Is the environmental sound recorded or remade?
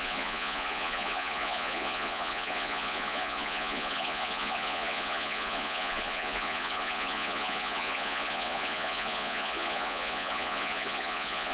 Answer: remade